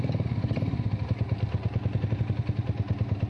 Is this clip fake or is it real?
real